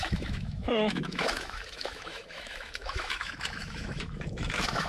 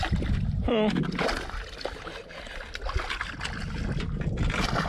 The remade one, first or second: first